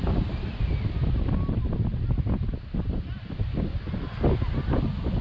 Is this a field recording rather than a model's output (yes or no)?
yes